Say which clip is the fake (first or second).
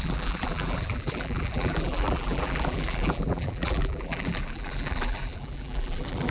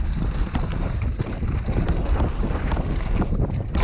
first